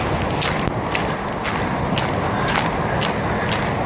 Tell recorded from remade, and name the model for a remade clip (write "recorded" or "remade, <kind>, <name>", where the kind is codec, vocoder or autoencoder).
recorded